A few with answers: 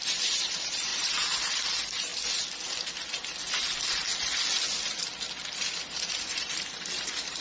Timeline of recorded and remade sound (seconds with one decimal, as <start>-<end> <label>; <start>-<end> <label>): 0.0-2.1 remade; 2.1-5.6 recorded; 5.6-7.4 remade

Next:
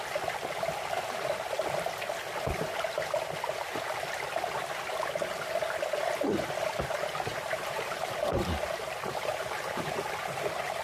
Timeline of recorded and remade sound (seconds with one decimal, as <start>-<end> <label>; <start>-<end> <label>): 0.0-7.3 recorded; 7.3-10.4 remade; 10.4-10.8 recorded

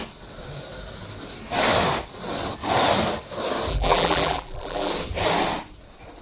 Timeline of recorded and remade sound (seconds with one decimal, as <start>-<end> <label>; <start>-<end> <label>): 0.0-3.7 recorded; 3.7-4.9 remade; 4.9-6.2 recorded

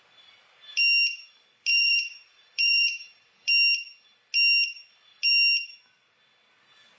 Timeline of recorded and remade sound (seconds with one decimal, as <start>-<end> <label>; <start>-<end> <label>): 0.0-1.7 recorded; 1.7-3.5 remade; 3.5-7.0 recorded

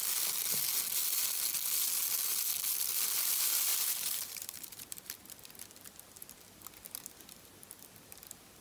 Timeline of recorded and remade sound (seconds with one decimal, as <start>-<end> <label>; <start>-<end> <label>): 0.0-3.7 recorded; 3.7-5.1 remade; 5.1-8.6 recorded

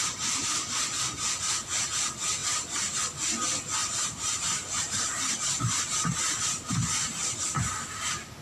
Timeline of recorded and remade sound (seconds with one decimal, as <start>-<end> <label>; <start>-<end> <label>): 0.0-1.0 remade; 1.0-2.4 recorded; 2.4-3.0 remade; 3.0-3.8 recorded; 3.8-5.6 remade; 5.6-8.4 recorded